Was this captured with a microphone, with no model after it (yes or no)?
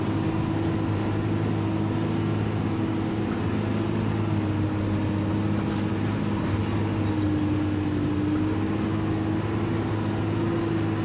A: yes